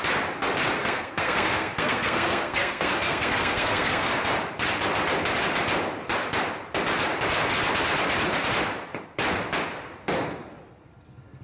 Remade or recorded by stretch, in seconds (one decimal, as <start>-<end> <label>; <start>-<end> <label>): 0.0-0.8 recorded; 0.8-4.1 remade; 4.1-11.4 recorded